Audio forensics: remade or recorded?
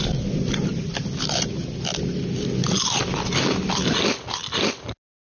recorded